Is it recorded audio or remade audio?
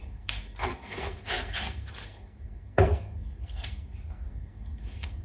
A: remade